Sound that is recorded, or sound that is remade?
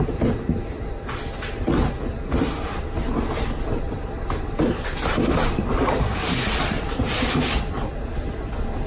recorded